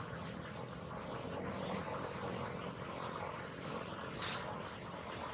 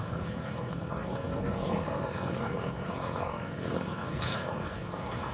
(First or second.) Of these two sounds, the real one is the first